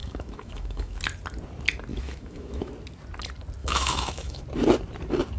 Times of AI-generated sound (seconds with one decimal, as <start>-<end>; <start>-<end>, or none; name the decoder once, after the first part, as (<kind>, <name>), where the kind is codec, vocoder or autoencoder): 0.0-1.0 (autoencoder, DAC-VAE); 1.9-2.7; 3.6-4.4